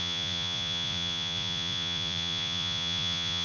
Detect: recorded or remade remade